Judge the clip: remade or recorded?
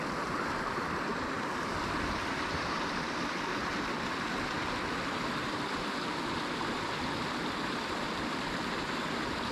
recorded